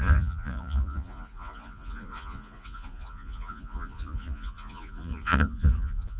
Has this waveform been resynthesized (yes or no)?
yes